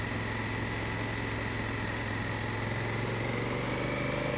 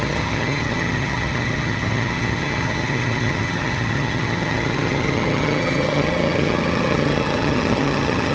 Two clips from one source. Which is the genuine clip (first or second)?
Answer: first